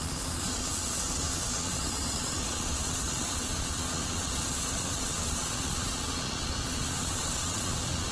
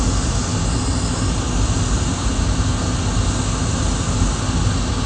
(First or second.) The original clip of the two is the second